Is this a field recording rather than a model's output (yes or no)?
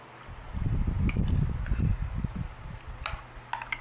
yes